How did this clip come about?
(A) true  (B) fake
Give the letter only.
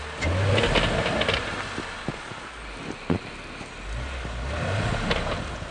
A